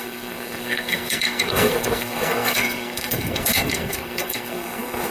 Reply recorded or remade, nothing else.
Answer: remade